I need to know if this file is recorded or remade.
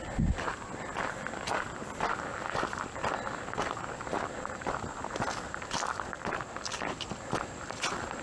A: recorded